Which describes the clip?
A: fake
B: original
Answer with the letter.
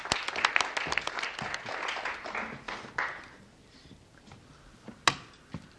B